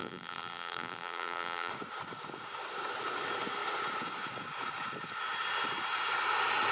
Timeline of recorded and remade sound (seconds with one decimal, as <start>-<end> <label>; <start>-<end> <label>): 0.0-1.7 remade; 1.7-6.7 recorded